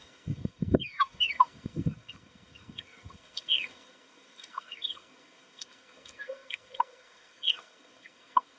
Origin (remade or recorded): remade